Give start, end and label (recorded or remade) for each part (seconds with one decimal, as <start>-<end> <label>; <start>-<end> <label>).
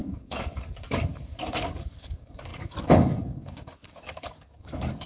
0.0-5.1 remade